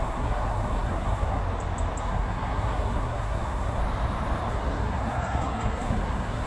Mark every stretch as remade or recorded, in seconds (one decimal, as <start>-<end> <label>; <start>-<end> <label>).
0.0-1.4 remade; 1.4-2.0 recorded; 2.0-3.8 remade; 3.8-4.5 recorded; 4.5-6.5 remade